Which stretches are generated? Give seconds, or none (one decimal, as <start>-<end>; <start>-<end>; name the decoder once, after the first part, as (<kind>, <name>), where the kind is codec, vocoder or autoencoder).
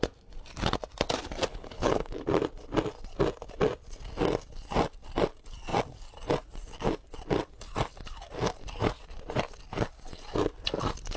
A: 1.5-2.1 (codec, HILCodec)